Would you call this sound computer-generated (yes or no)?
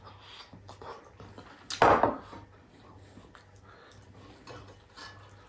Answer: no